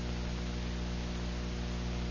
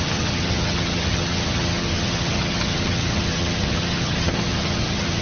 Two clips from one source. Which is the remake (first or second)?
second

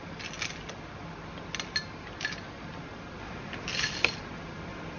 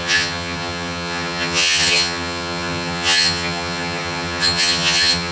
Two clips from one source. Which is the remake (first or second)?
second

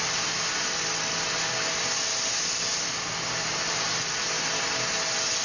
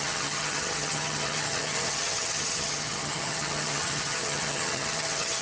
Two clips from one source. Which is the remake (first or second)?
second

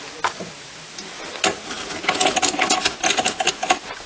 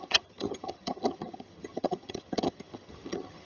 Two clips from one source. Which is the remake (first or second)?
second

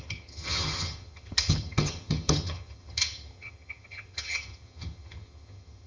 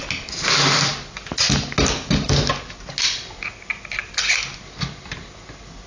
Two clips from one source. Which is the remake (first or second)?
first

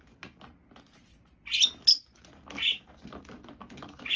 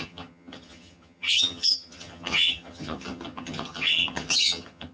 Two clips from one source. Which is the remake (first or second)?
second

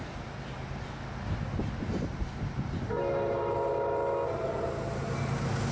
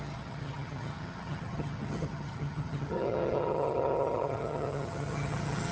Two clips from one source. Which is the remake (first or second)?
second